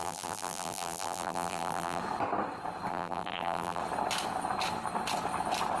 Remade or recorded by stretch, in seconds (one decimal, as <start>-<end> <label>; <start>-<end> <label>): 0.0-2.0 remade; 2.0-2.9 recorded; 2.9-3.8 remade; 3.8-5.8 recorded